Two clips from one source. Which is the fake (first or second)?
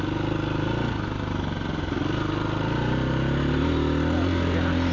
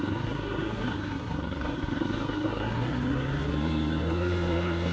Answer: second